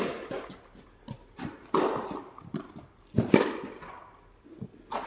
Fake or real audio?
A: real